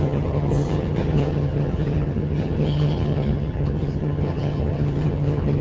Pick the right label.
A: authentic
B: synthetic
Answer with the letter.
B